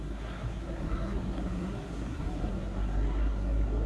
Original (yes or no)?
no